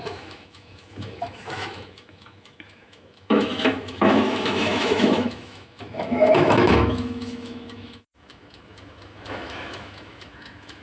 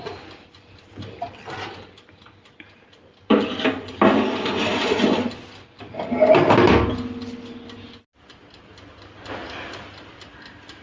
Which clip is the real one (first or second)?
second